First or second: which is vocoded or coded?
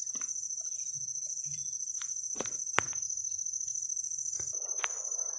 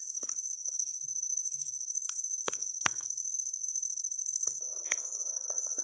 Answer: second